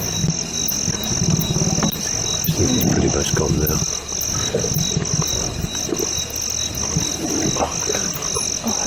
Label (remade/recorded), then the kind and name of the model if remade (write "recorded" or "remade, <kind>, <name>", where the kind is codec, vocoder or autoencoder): recorded